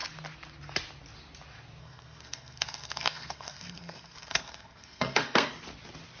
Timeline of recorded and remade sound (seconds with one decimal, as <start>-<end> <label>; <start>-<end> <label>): 0.0-1.8 recorded; 1.8-5.5 remade; 5.5-6.2 recorded